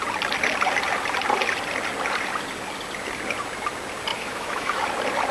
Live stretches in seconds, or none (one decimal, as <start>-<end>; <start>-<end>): 0.0-4.1; 4.8-5.3